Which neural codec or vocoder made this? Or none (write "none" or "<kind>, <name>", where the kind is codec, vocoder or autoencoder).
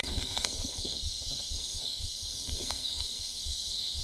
codec, SNAC